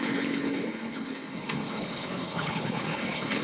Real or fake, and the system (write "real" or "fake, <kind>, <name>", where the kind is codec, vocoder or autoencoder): fake, codec, HILCodec